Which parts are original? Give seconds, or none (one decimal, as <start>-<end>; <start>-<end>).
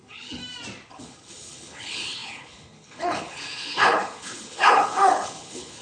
0.4-0.9